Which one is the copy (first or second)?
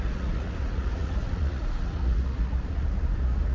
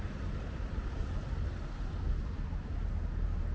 first